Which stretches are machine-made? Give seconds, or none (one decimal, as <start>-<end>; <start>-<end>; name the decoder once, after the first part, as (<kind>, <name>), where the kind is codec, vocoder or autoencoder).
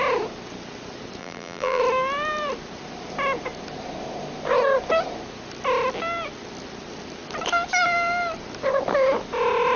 1.2-1.8 (vocoder, BigVGAN v2)